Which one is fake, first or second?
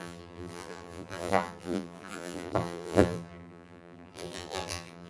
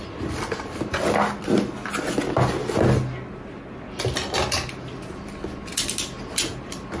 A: first